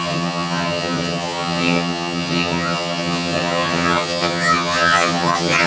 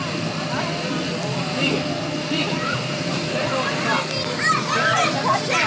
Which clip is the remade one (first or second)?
first